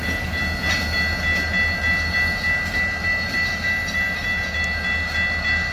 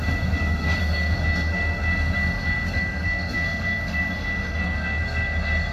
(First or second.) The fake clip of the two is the second